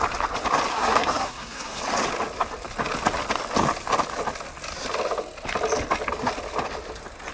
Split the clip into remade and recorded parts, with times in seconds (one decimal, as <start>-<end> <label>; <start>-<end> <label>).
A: 0.0-0.7 recorded; 0.7-1.8 remade; 1.8-7.3 recorded